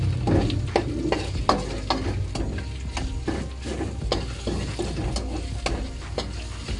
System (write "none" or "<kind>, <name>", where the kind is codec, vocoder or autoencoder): none